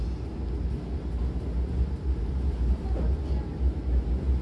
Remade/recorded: recorded